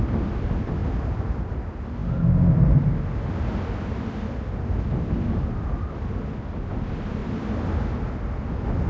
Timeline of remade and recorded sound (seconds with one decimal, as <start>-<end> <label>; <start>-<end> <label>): 0.0-8.9 recorded